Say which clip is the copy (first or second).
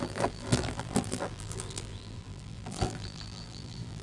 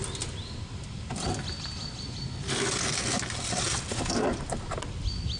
first